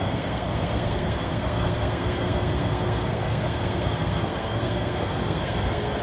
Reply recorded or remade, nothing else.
remade